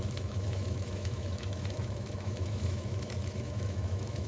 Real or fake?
fake